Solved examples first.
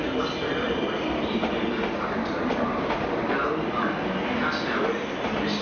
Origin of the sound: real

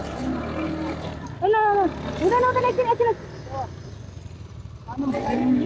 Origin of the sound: real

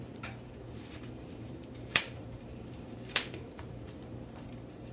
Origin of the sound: fake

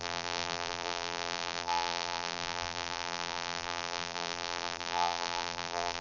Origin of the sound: fake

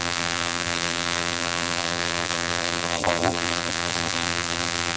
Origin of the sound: fake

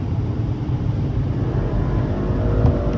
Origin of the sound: real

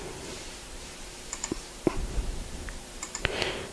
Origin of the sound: fake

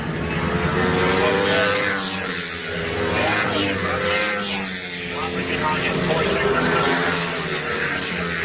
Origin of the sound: real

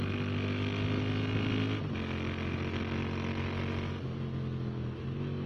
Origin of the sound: real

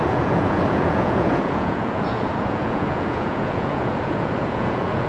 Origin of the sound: fake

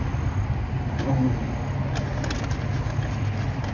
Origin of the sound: real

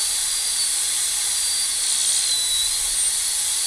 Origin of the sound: real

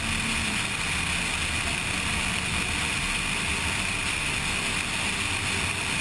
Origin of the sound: real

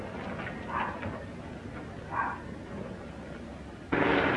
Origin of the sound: real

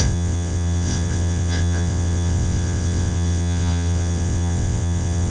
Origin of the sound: fake